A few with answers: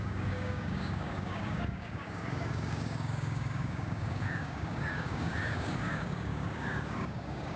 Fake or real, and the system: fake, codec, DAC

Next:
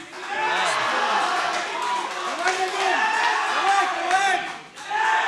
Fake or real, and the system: real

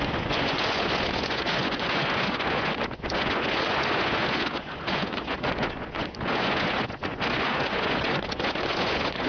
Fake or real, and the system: fake, vocoder, Vocos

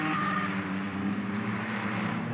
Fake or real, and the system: fake, vocoder, BigVGAN v2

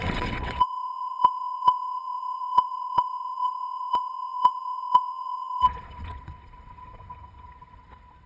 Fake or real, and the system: fake, vocoder, WaveNeXt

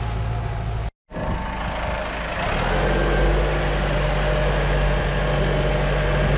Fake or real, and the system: real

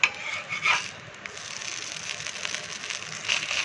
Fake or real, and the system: real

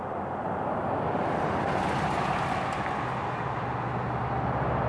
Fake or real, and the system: real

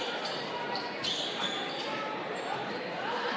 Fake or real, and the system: fake, vocoder, BigVGAN v2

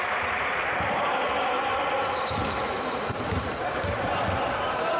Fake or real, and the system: real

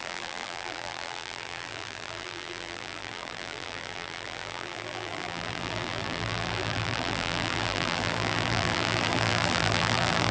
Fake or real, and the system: fake, vocoder, BigVGAN v2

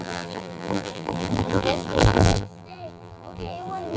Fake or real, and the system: fake, vocoder, BigVGAN v2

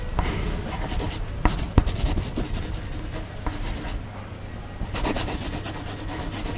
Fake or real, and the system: real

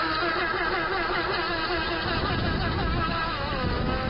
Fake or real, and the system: real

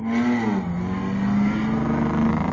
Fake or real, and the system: real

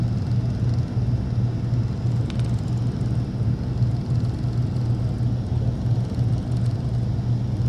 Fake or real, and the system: real